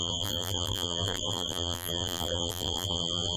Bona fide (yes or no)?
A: no